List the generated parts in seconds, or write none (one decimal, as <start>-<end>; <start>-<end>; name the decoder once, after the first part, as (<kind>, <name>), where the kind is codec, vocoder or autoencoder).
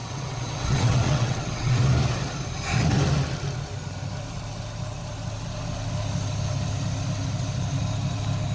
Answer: 0.0-1.8 (vocoder, WaveNeXt)